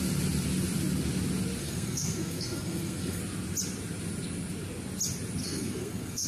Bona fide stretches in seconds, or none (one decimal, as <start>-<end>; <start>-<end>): 0.0-1.6; 3.2-5.4